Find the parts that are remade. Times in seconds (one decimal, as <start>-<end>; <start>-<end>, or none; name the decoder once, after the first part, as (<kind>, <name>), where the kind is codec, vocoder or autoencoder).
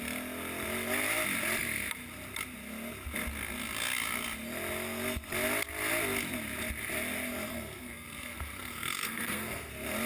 7.5-9.7 (codec, SNAC)